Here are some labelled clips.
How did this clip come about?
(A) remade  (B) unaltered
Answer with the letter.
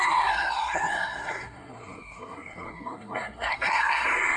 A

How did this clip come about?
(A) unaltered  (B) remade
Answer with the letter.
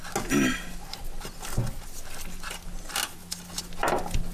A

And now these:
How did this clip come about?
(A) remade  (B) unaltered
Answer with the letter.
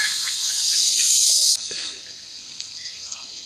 A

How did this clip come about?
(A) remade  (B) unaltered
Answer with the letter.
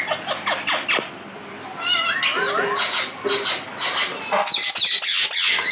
B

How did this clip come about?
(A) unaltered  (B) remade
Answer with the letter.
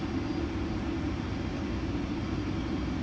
A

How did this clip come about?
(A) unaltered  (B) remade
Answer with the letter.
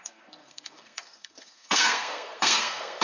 B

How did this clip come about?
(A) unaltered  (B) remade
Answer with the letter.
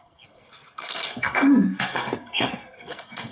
B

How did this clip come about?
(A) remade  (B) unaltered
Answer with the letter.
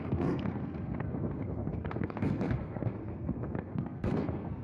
A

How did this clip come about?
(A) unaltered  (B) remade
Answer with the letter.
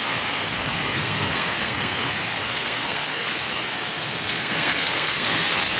B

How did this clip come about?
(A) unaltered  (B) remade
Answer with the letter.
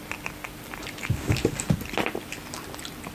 A